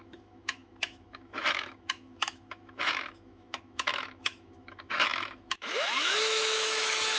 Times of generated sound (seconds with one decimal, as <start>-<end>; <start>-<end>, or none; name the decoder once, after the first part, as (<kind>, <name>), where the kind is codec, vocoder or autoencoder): 0.0-7.2 (autoencoder, DAC-VAE)